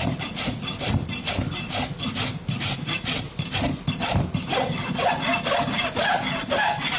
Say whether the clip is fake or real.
real